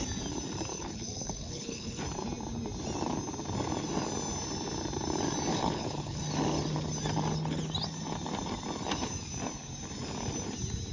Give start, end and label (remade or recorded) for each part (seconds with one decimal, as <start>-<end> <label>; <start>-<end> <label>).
0.0-0.7 recorded; 0.7-2.0 remade; 2.0-5.5 recorded; 5.5-6.2 remade; 6.2-10.9 recorded